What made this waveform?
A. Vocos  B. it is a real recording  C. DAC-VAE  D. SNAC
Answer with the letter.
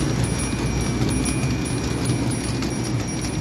B